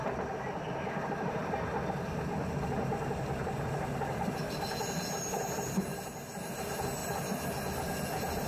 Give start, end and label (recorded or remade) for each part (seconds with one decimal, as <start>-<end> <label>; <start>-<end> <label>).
0.0-8.5 recorded

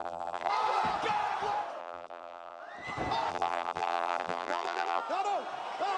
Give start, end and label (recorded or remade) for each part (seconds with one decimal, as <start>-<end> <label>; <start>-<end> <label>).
0.0-0.5 remade; 0.5-1.8 recorded; 1.8-2.6 remade; 2.6-3.3 recorded; 3.3-5.0 remade; 5.0-6.0 recorded

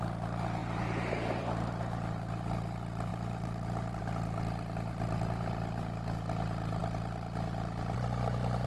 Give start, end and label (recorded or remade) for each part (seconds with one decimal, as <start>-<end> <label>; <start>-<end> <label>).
0.0-0.6 recorded; 0.6-1.7 remade; 1.7-3.1 recorded; 3.1-4.0 remade; 4.0-8.7 recorded

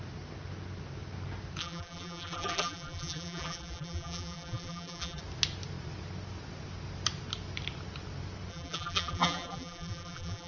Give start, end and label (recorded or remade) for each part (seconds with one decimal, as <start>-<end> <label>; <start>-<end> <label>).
0.0-1.6 recorded; 1.6-5.2 remade; 5.2-8.5 recorded; 8.5-10.5 remade

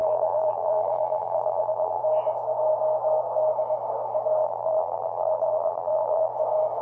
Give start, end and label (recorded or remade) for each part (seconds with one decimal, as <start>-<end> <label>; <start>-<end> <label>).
0.0-2.0 remade; 2.0-4.4 recorded; 4.4-6.3 remade; 6.3-6.8 recorded